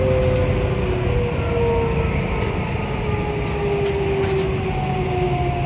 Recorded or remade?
recorded